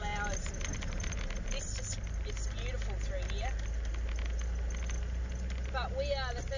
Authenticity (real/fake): real